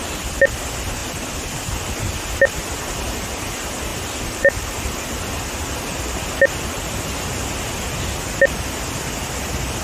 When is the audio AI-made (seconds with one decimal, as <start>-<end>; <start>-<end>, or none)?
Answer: 3.9-5.0